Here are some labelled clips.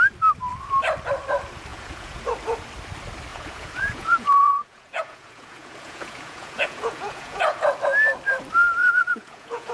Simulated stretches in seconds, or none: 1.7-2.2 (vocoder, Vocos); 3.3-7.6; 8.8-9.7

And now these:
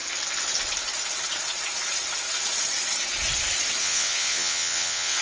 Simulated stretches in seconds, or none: 3.8-5.2 (vocoder, WaveNeXt)

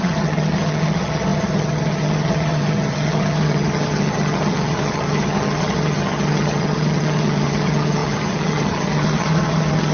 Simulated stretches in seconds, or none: 0.0-9.9 (vocoder, HiFi-GAN)

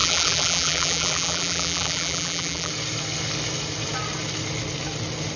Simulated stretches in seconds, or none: 0.0-2.7 (vocoder, BigVGAN v2)

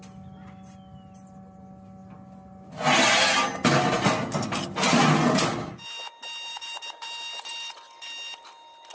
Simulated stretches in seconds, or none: 6.5-7.5 (vocoder, BigVGAN v2)

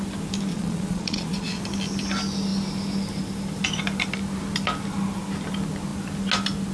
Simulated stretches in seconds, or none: 0.5-1.6 (vocoder, Vocos)

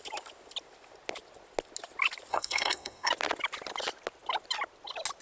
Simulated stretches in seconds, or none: 2.3-3.1 (codec, SNAC)

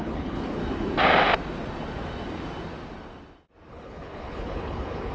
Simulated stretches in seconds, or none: 0.0-0.6 (codec, HILCodec); 3.7-5.1